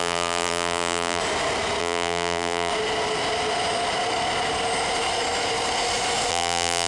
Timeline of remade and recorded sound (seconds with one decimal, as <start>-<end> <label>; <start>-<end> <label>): 0.0-1.2 remade; 1.2-1.8 recorded; 1.8-2.7 remade; 2.7-6.3 recorded; 6.3-6.9 remade